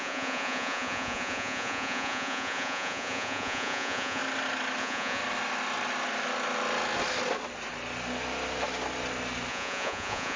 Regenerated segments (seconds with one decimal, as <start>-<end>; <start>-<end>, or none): 0.0-4.2; 4.8-5.2; 9.5-10.4